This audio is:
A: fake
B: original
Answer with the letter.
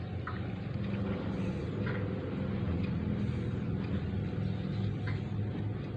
B